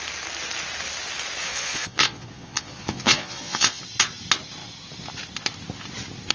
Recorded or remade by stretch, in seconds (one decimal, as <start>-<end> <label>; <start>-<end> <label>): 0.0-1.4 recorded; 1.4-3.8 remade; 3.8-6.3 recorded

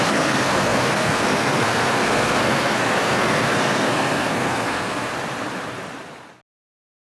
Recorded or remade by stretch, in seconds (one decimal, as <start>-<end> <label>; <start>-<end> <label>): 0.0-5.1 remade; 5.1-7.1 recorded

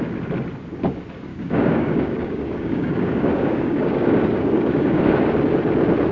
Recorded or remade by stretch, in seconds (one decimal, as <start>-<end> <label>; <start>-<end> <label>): 0.0-1.3 recorded; 1.3-5.0 remade; 5.0-6.1 recorded

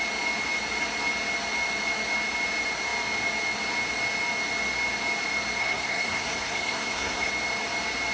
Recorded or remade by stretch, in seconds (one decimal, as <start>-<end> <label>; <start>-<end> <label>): 0.0-5.6 recorded; 5.6-7.3 remade; 7.3-8.1 recorded

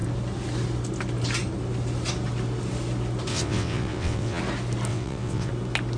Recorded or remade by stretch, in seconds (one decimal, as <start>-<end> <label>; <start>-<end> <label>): 0.0-3.3 recorded; 3.3-4.4 remade; 4.4-4.9 recorded; 4.9-5.5 remade; 5.5-6.0 recorded

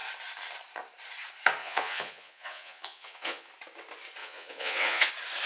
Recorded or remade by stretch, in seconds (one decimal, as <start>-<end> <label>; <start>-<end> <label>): 0.0-1.6 recorded; 1.6-3.5 remade; 3.5-4.2 recorded; 4.2-5.1 remade; 5.1-5.5 recorded

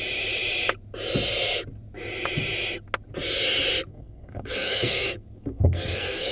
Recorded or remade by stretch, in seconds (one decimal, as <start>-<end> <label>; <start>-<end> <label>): 0.0-3.9 recorded; 3.9-6.3 remade